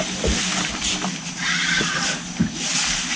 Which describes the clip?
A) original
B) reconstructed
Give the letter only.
A